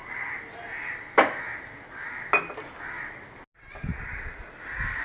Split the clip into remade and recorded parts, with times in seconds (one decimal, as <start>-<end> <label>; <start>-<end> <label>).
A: 0.0-3.9 recorded; 3.9-4.5 remade; 4.5-5.0 recorded